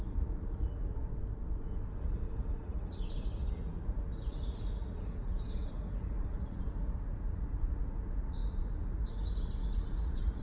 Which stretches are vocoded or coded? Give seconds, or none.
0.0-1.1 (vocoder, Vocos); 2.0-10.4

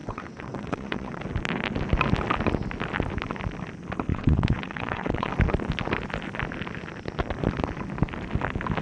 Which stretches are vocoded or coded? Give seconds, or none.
0.0-1.2 (vocoder, WaveNeXt); 4.1-5.3

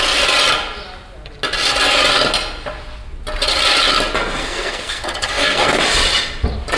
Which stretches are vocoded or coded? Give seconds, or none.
4.4-5.8 (codec, SNAC)

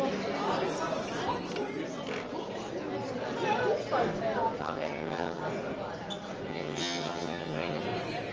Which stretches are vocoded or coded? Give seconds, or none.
4.6-5.4 (vocoder, HiFi-GAN); 6.5-7.8

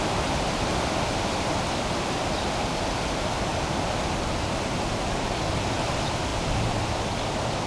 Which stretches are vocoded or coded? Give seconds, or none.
none

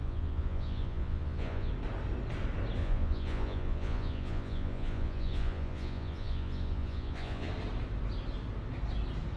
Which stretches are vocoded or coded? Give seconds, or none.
0.0-1.7 (vocoder, Vocos); 2.8-7.5

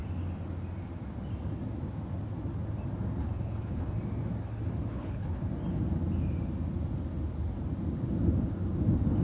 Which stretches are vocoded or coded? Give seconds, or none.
3.2-3.9 (codec, HILCodec); 4.9-5.5